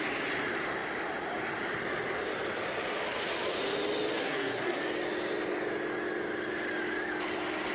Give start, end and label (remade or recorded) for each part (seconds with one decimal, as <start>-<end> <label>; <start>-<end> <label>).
0.0-4.2 recorded; 4.2-4.8 remade; 4.8-7.7 recorded